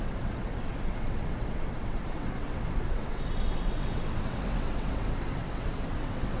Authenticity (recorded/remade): remade